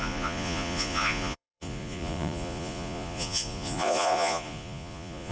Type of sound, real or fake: fake